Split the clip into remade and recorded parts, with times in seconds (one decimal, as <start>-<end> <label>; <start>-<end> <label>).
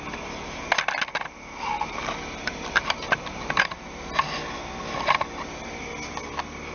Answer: 0.0-2.4 recorded; 2.4-4.1 remade; 4.1-6.7 recorded